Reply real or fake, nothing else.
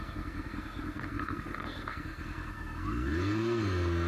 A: fake